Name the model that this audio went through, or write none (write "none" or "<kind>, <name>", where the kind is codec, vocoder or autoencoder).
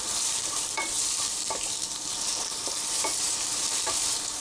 vocoder, BigVGAN v2